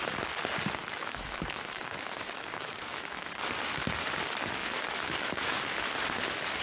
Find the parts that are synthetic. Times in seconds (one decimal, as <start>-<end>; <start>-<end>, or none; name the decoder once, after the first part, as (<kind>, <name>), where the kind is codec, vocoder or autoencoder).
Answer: 0.8-3.3 (autoencoder, DAC-VAE); 4.6-5.6